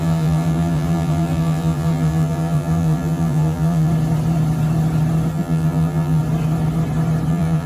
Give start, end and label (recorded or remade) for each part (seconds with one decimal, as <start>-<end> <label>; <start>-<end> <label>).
0.0-3.9 remade; 3.9-5.3 recorded; 5.3-6.2 remade; 6.2-7.3 recorded; 7.3-7.7 remade